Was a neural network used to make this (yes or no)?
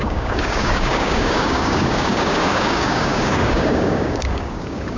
yes